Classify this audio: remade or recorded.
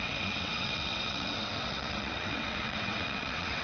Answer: remade